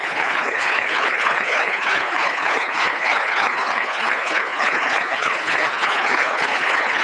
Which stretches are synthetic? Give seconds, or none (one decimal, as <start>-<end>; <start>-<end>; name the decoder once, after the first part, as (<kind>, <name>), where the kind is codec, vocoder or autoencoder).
0.0-7.0 (codec, HILCodec)